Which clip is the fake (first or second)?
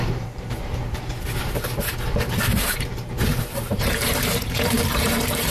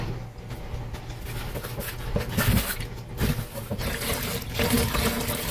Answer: first